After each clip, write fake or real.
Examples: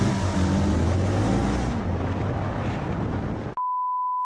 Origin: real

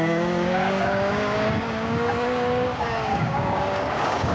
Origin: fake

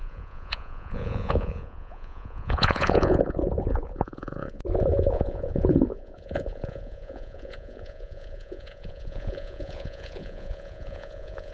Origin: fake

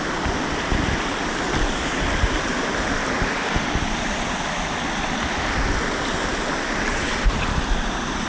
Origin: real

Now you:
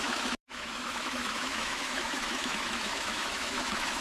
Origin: fake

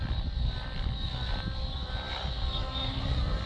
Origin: real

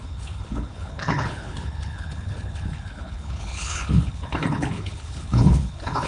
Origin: fake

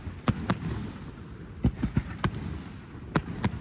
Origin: real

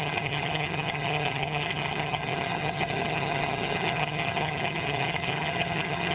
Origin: fake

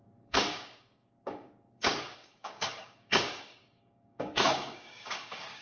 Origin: fake